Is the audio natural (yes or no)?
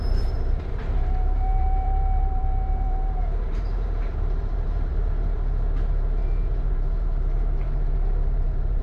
no